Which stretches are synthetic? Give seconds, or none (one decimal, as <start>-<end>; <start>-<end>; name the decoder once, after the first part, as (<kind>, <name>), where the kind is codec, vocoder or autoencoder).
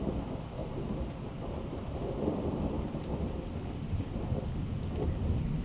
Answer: 0.6-3.1 (vocoder, BigVGAN v2)